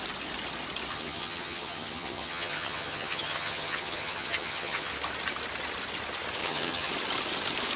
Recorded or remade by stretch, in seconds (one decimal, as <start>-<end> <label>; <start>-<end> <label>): 0.0-0.9 recorded; 0.9-4.9 remade; 4.9-6.4 recorded; 6.4-6.9 remade; 6.9-7.8 recorded